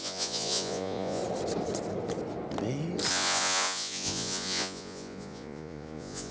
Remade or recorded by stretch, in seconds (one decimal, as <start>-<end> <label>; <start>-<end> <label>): 0.0-1.2 remade; 1.2-3.1 recorded; 3.1-6.3 remade